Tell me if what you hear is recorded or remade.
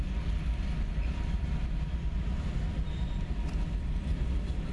recorded